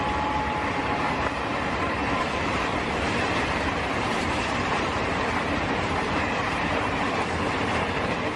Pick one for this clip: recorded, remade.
remade